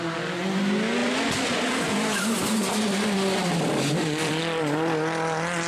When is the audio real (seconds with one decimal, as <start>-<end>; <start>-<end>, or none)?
0.0-1.0; 4.4-5.7